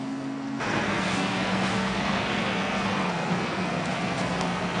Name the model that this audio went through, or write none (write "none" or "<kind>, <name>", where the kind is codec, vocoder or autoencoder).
codec, SNAC